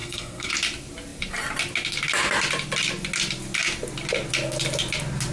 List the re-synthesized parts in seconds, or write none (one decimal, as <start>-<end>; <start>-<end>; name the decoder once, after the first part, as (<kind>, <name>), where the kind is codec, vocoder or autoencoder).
0.0-0.5 (codec, SNAC)

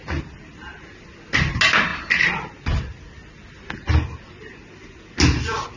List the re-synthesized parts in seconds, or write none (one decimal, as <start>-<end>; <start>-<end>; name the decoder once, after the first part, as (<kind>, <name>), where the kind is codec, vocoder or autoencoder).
none

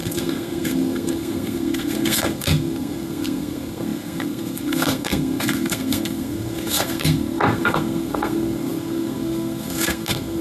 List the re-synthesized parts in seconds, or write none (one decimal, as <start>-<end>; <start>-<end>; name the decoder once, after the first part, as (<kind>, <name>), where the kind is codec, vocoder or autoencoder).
0.0-10.4 (codec, SNAC)

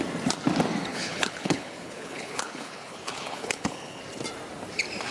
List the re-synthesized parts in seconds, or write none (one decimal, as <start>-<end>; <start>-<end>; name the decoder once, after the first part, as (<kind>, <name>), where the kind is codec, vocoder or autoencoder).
0.9-4.0 (codec, HILCodec)

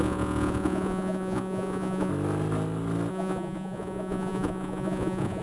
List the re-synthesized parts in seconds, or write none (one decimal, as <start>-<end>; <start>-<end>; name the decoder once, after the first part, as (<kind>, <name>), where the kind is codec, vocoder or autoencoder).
0.0-2.1 (vocoder, Vocos); 3.1-5.4

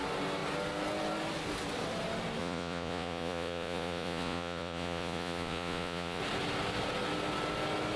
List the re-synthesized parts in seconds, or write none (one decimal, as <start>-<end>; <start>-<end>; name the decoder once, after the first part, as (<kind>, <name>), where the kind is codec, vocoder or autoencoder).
2.4-6.2 (vocoder, Vocos)